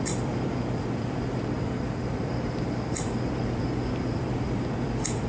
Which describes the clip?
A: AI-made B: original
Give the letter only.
A